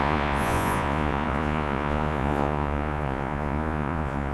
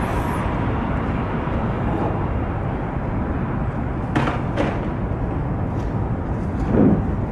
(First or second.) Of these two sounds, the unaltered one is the second